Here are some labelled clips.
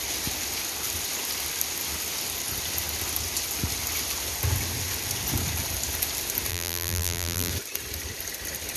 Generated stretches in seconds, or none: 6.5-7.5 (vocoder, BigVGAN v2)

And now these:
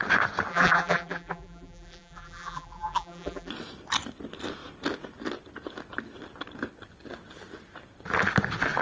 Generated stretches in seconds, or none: 0.5-3.5 (vocoder, BigVGAN v2)

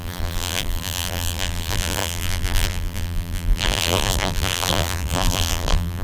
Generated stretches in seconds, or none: 0.0-6.0 (vocoder, BigVGAN v2)

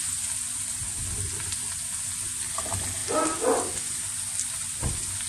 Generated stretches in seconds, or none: none

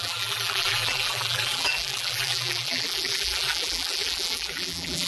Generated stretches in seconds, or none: 0.0-5.1 (vocoder, BigVGAN v2)